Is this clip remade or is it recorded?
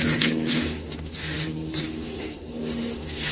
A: remade